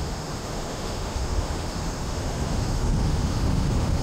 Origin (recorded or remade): remade